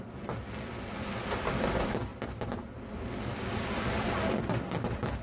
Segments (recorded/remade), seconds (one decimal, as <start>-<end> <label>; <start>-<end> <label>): 0.0-5.2 recorded